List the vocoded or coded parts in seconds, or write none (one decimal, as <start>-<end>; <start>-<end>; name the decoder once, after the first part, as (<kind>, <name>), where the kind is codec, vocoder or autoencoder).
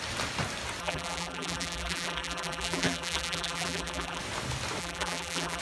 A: 0.8-4.2 (vocoder, BigVGAN v2); 4.8-5.6